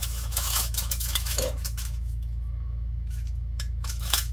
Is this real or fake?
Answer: fake